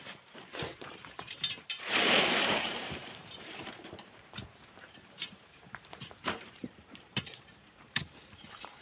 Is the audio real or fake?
fake